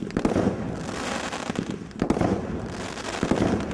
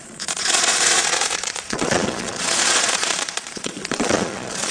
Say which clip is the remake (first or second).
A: second